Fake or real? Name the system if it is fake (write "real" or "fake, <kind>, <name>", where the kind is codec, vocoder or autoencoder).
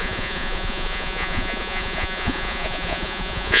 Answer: fake, vocoder, Vocos